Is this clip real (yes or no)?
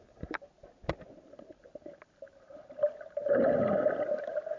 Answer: yes